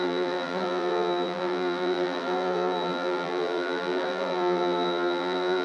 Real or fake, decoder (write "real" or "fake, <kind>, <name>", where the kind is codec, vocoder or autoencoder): fake, vocoder, BigVGAN v2